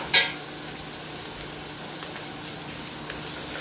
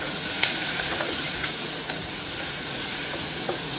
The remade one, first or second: second